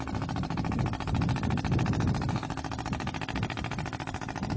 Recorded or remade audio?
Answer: recorded